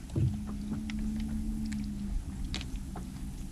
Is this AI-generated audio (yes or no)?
no